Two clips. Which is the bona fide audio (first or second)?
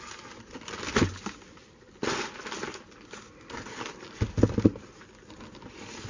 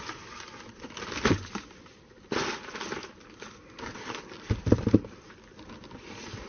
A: first